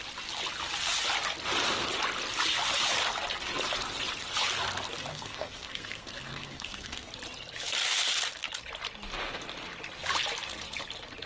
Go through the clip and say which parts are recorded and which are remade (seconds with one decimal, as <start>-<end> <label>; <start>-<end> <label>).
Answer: 0.0-5.1 recorded; 5.1-7.1 remade; 7.1-11.3 recorded